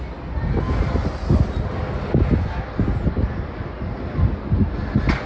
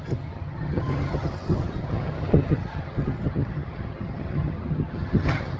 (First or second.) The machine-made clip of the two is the second